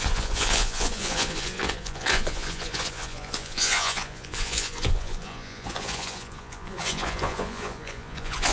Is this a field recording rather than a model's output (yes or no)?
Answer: no